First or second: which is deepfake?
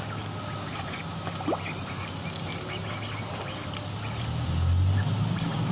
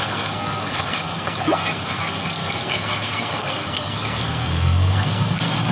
second